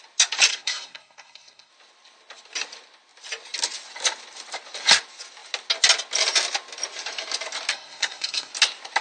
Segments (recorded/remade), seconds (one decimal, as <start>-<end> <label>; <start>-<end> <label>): 0.0-0.5 recorded; 0.5-1.7 remade; 1.7-7.7 recorded; 7.7-8.5 remade; 8.5-9.0 recorded